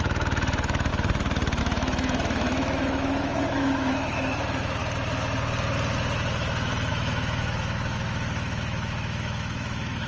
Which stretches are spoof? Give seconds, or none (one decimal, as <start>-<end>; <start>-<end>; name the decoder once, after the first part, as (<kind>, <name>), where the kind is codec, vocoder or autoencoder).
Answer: 0.0-0.9 (autoencoder, DAC-VAE); 1.6-4.8; 6.9-10.1